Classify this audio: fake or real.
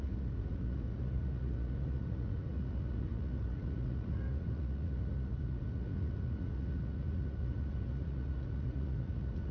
fake